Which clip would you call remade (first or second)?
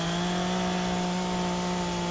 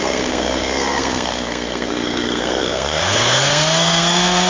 second